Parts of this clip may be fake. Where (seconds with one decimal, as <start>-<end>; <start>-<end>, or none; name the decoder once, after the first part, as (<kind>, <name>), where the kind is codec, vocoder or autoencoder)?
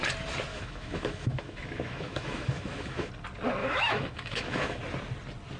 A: 0.5-3.1 (autoencoder, DAC-VAE); 3.6-4.8